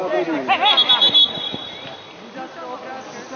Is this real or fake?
real